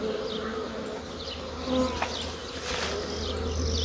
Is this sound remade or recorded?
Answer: recorded